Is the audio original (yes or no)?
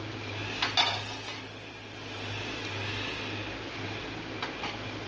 yes